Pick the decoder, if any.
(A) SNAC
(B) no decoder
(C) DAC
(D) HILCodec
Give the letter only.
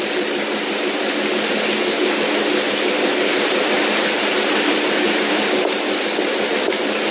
B